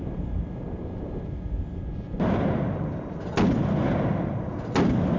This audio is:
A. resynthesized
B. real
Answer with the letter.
B